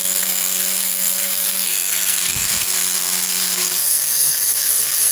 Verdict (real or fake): fake